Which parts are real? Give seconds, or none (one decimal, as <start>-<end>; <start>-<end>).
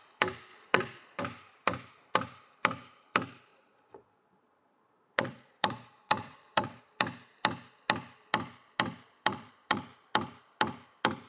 0.0-0.5; 1.2-3.5; 6.8-9.2; 9.8-11.3